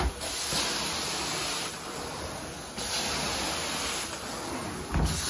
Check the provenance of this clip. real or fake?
real